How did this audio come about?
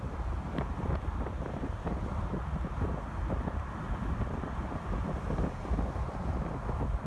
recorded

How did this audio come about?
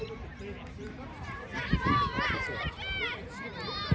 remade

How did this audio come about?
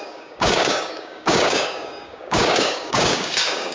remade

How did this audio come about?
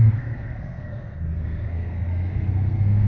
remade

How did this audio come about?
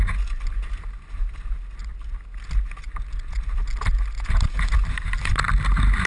recorded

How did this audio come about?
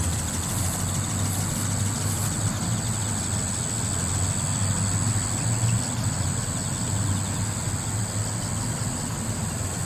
recorded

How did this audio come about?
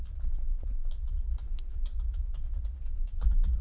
remade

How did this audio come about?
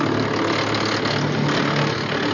recorded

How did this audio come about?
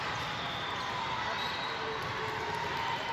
recorded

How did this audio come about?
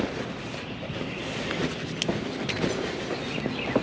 recorded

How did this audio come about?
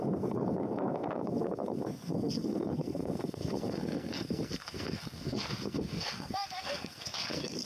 remade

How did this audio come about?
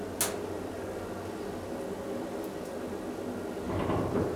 recorded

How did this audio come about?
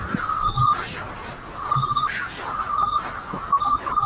recorded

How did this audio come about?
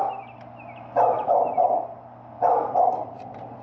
recorded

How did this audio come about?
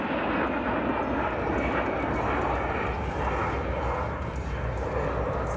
recorded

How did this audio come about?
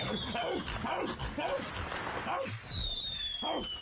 recorded